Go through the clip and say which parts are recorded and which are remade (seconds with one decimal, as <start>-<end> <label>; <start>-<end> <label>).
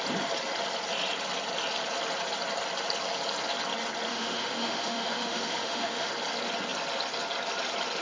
0.0-4.1 recorded; 4.1-6.1 remade; 6.1-8.0 recorded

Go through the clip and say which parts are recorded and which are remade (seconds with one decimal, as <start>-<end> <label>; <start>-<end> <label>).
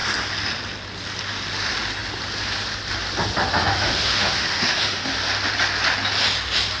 0.0-3.5 recorded; 3.5-5.1 remade; 5.1-6.8 recorded